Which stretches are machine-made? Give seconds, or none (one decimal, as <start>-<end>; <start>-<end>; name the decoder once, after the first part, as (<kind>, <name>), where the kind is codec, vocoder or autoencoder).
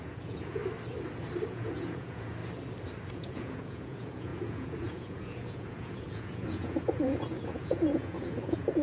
0.0-0.6 (vocoder, Vocos); 1.5-2.4; 3.1-8.8